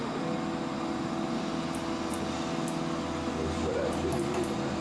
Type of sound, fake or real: real